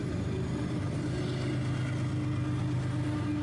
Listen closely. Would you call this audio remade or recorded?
recorded